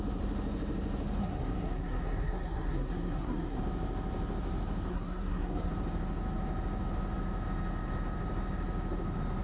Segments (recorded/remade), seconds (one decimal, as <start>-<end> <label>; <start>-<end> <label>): 0.0-1.2 recorded; 1.2-3.6 remade; 3.6-4.9 recorded; 4.9-5.7 remade; 5.7-9.4 recorded